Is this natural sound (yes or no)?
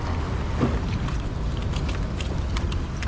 yes